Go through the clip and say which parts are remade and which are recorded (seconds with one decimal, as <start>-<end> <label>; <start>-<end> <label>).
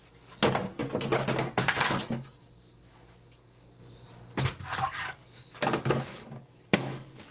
0.0-0.8 remade; 0.8-2.0 recorded; 2.0-3.8 remade; 3.8-4.4 recorded; 4.4-7.3 remade